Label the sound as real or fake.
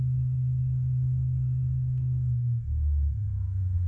fake